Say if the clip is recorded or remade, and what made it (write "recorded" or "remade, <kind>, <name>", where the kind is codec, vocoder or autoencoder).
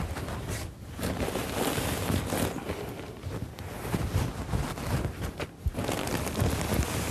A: recorded